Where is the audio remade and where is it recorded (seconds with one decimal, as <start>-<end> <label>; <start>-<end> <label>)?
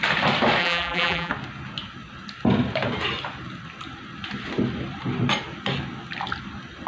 0.0-0.6 recorded; 0.6-1.3 remade; 1.3-6.9 recorded